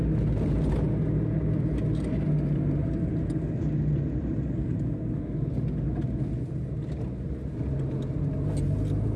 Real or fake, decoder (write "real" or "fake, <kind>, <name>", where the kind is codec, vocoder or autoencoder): real